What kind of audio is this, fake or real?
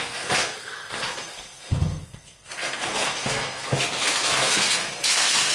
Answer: fake